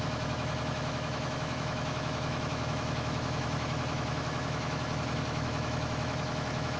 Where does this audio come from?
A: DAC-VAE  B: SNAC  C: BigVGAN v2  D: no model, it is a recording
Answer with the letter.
A